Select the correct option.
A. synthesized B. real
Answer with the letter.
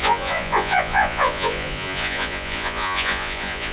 A